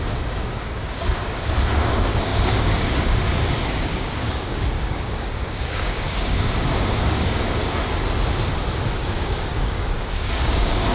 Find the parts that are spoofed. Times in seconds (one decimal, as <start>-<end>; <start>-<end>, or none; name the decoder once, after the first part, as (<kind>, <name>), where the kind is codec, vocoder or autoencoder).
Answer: 0.0-7.6 (codec, DAC); 9.0-10.9